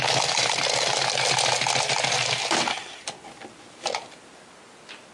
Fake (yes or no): no